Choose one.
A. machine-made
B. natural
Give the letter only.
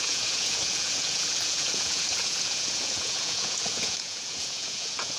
A